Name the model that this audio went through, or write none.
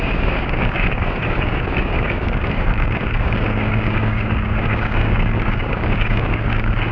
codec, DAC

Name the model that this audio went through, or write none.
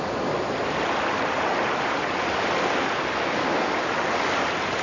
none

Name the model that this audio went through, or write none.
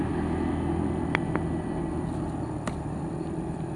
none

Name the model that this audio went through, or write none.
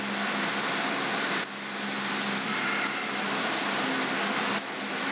none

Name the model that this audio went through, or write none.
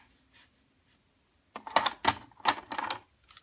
none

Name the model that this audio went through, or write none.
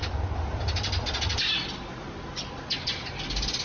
none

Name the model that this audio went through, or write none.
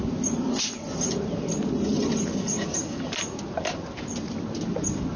none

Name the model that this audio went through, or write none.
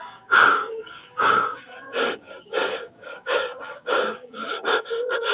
codec, DAC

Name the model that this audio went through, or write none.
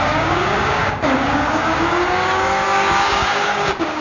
codec, DAC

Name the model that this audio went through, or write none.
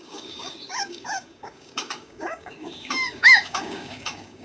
codec, DAC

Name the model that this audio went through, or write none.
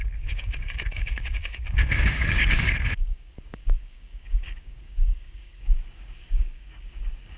codec, DAC